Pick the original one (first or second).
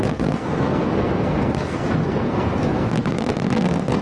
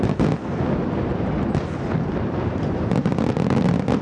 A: second